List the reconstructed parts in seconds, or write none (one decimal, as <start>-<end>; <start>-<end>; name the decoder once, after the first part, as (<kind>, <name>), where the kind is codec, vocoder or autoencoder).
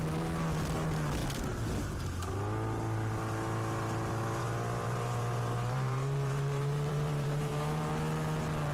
4.4-7.9 (vocoder, BigVGAN v2)